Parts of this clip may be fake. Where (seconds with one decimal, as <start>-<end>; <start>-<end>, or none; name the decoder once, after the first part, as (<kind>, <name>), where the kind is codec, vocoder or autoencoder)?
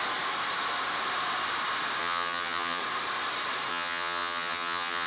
2.0-2.8 (vocoder, HiFi-GAN); 3.7-5.1